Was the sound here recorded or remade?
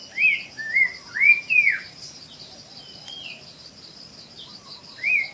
recorded